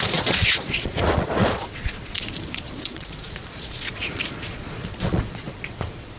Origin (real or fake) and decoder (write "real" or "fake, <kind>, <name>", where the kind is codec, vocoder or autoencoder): fake, vocoder, Vocos